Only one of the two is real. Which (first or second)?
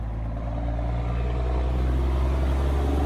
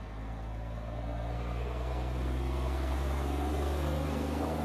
first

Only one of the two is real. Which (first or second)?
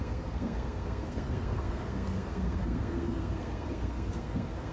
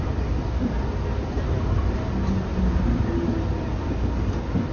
second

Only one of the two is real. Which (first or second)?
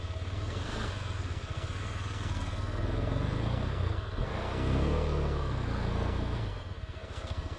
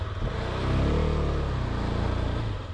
second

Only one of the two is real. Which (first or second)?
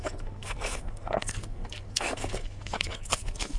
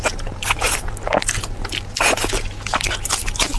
second